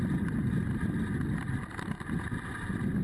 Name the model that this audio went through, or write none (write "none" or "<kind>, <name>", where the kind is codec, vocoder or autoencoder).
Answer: none